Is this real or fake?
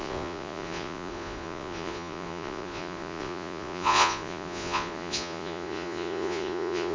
fake